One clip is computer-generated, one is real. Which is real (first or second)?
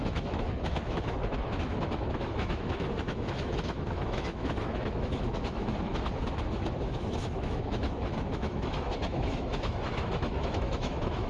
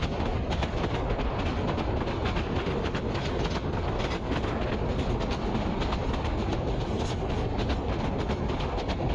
second